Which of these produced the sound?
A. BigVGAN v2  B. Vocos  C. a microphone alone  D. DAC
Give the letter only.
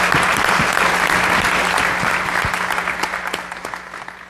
C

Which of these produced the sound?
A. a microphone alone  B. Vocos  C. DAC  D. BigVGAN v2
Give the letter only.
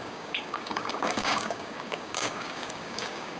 C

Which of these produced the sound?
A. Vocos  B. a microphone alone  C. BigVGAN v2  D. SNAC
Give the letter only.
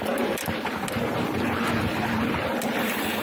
B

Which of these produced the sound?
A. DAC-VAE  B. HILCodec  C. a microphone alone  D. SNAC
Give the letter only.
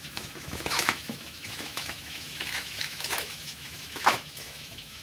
A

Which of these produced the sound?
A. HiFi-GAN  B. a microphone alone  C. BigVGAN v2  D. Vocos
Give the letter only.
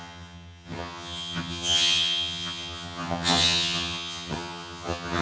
A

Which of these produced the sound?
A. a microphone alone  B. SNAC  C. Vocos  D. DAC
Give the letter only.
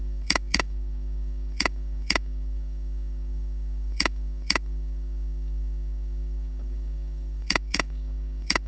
D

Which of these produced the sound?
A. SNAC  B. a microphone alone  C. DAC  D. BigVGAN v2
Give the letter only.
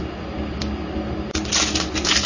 B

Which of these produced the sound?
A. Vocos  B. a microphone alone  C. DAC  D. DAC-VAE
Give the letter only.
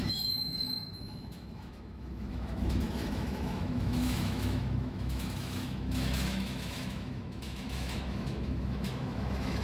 D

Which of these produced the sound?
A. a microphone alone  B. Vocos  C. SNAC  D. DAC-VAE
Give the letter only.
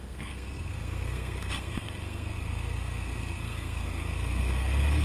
C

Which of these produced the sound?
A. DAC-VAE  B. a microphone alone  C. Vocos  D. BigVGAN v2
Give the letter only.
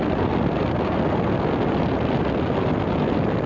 B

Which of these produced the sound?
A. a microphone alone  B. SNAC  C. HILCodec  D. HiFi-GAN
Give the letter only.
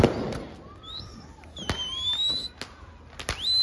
A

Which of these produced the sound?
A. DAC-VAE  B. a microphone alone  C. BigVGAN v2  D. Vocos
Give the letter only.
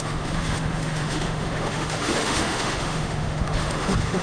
A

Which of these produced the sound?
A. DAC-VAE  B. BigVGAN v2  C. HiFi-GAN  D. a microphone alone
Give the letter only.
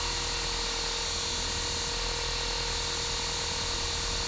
D